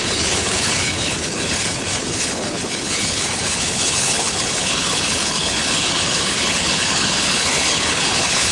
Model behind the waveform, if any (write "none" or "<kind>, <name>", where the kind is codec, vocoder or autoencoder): codec, HILCodec